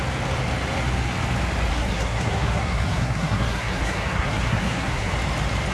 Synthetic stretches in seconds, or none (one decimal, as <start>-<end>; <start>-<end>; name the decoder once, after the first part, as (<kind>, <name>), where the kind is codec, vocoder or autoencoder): 1.7-5.1 (codec, SNAC)